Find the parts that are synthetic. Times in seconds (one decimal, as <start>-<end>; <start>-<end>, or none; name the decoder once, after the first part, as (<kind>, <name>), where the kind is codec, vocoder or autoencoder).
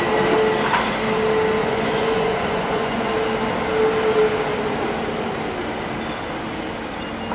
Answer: 1.6-3.1 (vocoder, Vocos)